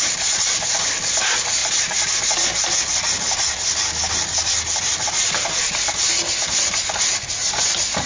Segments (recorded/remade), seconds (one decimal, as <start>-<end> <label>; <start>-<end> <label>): 0.0-8.1 recorded